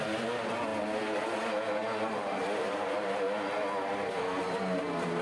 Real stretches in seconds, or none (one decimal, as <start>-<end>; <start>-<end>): 0.0-5.2